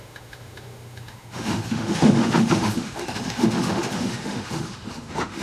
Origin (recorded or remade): remade